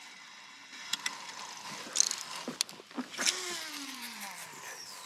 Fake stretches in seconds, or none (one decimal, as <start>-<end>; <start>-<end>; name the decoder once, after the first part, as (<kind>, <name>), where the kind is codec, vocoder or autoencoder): none